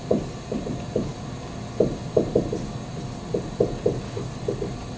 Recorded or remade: recorded